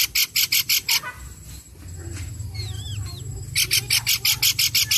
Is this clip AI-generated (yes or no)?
no